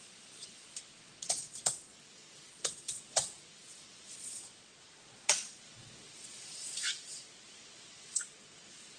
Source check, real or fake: fake